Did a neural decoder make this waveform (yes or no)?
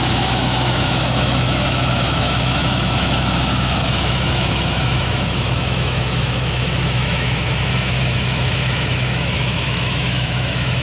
yes